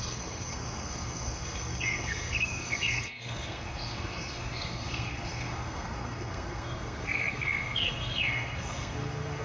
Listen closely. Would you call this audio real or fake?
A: fake